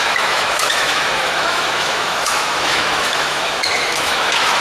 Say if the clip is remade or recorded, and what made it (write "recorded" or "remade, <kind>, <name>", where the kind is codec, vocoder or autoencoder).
remade, autoencoder, DAC-VAE